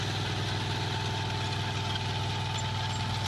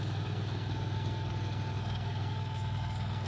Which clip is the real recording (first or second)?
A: first